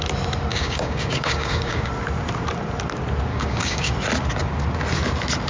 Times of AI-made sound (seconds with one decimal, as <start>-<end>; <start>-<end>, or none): 0.5-1.9; 3.3-3.9